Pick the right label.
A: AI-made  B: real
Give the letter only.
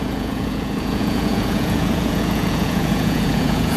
A